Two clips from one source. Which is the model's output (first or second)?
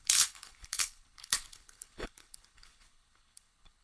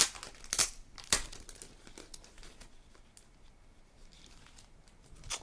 first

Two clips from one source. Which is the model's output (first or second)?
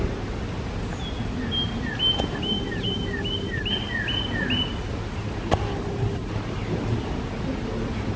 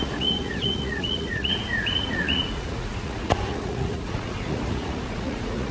second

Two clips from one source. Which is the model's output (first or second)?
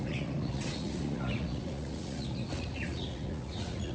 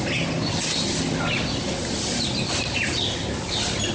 first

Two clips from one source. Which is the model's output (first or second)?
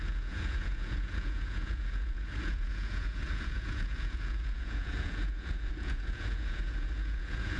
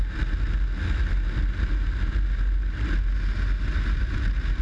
first